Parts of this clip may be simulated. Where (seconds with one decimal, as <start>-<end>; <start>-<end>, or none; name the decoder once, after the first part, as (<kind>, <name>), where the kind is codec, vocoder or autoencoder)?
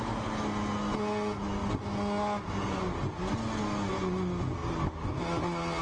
none